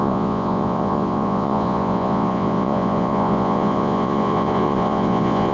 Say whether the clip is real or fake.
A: fake